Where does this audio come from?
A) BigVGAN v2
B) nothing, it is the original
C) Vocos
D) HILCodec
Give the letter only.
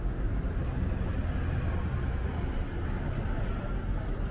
B